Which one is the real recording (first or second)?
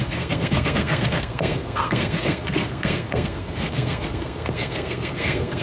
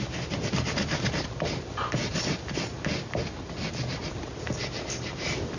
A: second